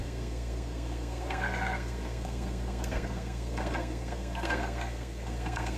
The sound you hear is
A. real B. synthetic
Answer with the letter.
B